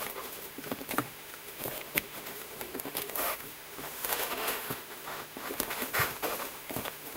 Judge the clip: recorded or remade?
remade